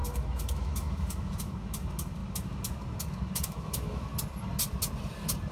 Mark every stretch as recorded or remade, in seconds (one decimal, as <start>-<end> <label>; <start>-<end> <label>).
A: 0.0-4.1 remade; 4.1-5.5 recorded